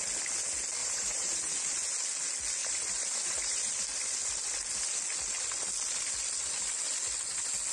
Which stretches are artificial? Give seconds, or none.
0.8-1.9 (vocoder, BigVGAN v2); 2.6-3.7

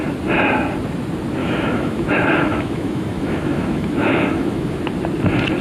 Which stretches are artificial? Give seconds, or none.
1.4-4.8 (autoencoder, DAC-VAE)

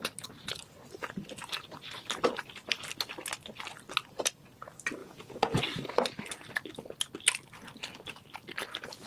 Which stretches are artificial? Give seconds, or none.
5.0-5.6 (vocoder, Vocos)

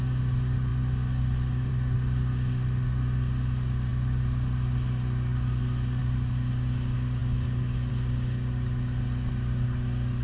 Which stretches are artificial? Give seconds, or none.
none

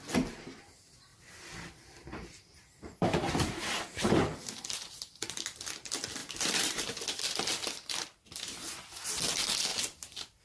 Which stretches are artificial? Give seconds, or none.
1.1-5.7 (vocoder, BigVGAN v2); 6.2-7.0; 9.7-10.4

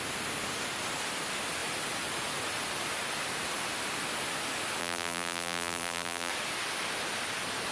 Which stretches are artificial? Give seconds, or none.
4.8-6.3 (vocoder, BigVGAN v2)

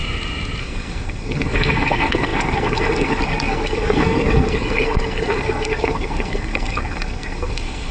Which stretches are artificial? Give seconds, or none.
0.6-7.9 (codec, SNAC)

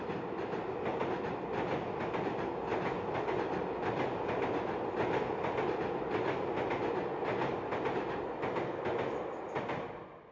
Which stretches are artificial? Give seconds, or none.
none